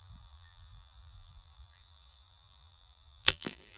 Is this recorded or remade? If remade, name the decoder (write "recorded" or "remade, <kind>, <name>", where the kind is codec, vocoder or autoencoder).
remade, vocoder, BigVGAN v2